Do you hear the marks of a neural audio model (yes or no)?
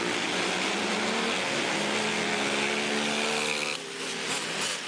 no